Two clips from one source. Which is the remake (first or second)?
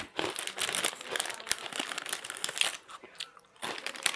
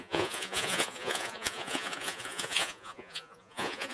second